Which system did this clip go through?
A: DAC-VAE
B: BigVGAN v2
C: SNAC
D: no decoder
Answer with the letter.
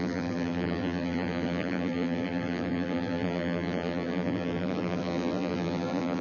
B